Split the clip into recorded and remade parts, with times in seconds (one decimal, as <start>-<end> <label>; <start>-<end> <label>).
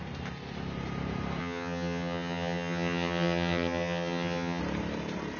0.0-1.4 recorded; 1.4-4.6 remade; 4.6-5.4 recorded